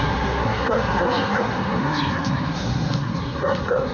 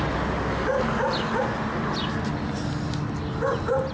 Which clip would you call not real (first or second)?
first